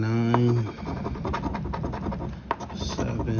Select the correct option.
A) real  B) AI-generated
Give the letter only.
A